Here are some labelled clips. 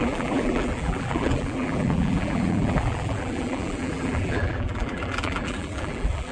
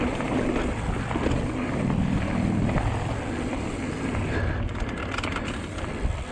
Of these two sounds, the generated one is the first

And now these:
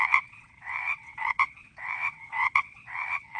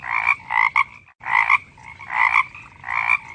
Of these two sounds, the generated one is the first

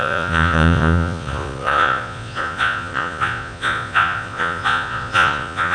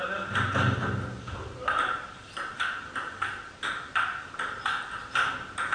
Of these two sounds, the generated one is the first